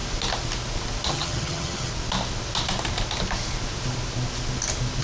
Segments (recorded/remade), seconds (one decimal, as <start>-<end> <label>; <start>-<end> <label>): 0.0-1.1 recorded; 1.1-1.9 remade; 1.9-5.0 recorded

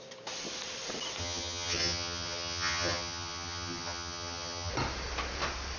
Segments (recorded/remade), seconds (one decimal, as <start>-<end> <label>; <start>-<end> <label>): 0.0-1.2 recorded; 1.2-4.7 remade; 4.7-5.8 recorded

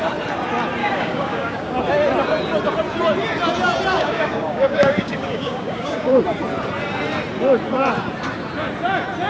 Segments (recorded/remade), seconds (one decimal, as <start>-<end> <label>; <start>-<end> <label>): 0.0-0.8 recorded; 0.8-1.8 remade; 1.8-3.9 recorded; 3.9-6.2 remade; 6.2-9.3 recorded

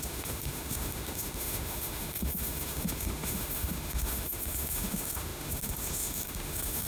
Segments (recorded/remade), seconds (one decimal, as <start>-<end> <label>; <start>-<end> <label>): 0.0-6.9 remade

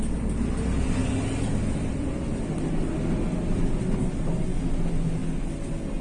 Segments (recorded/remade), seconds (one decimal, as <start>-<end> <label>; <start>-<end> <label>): 0.0-6.0 recorded

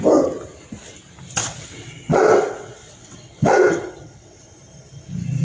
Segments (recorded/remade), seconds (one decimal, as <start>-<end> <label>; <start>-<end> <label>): 0.0-1.4 recorded; 1.4-4.4 remade; 4.4-5.4 recorded

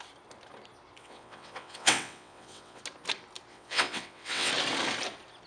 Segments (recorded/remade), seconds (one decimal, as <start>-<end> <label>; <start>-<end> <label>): 0.0-1.0 recorded; 1.0-2.8 remade; 2.8-3.5 recorded; 3.5-4.5 remade; 4.5-5.5 recorded